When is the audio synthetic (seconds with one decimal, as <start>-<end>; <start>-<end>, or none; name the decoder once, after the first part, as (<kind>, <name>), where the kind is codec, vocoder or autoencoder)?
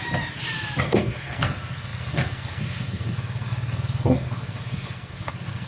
0.8-5.7 (codec, SNAC)